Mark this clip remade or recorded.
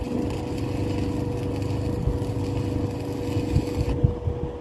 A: recorded